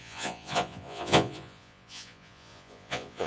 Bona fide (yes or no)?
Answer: no